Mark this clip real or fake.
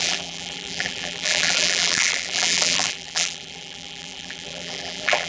fake